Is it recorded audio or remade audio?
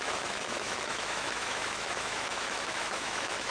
remade